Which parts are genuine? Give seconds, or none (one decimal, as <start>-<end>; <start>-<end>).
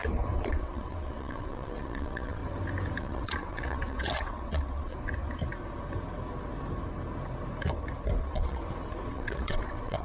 0.0-0.5; 2.4-3.0; 4.9-8.2; 8.6-9.1